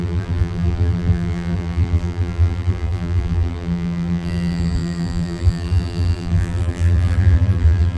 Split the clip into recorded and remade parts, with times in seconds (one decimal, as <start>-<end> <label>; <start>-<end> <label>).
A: 0.0-8.0 remade